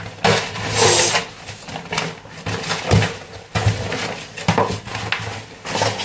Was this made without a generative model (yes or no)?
yes